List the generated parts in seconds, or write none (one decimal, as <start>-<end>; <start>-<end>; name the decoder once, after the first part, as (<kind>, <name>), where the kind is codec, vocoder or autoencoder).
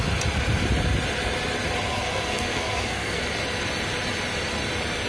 1.9-3.2 (codec, SNAC)